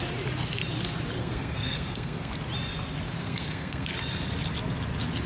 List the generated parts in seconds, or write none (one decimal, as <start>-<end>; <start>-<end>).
1.2-2.3; 3.2-3.9